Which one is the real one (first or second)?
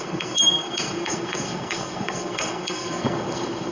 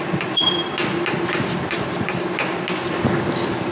second